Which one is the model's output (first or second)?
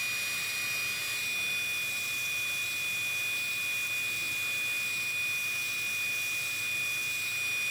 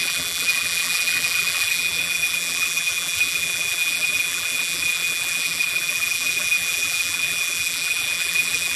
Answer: second